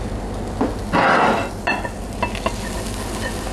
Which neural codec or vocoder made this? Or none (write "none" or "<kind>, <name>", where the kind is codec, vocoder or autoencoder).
none